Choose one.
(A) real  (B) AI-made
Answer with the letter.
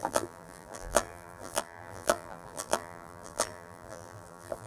B